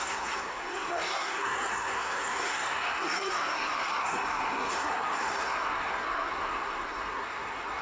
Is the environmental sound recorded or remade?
remade